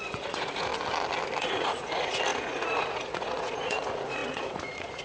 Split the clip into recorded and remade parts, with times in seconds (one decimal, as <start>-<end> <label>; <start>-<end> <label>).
0.0-0.7 remade; 0.7-1.4 recorded; 1.4-5.0 remade